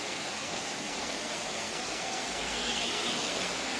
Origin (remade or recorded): remade